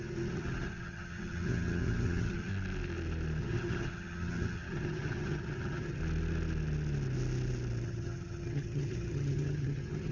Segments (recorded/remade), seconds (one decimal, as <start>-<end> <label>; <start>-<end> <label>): 0.0-2.5 remade; 2.5-3.4 recorded; 3.4-6.0 remade; 6.0-7.8 recorded; 7.8-10.1 remade